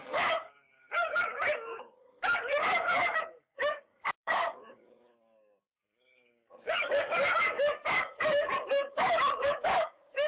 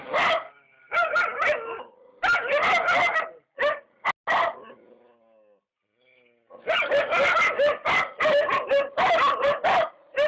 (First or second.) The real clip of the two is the second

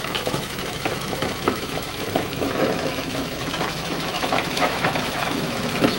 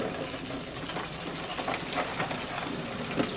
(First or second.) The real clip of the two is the second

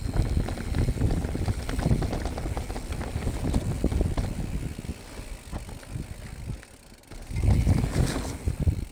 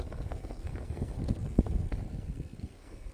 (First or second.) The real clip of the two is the first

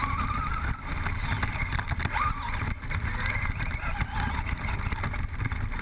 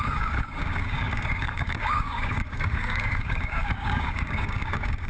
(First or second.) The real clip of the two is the first